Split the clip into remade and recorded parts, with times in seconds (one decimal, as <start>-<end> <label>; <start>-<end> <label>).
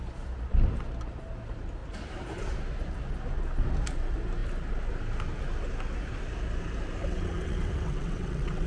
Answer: 0.0-7.0 recorded; 7.0-8.7 remade